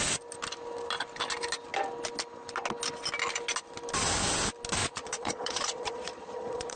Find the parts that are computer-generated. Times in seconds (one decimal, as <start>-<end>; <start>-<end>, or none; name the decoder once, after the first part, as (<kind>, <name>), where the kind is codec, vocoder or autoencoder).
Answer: 4.8-6.8 (vocoder, Vocos)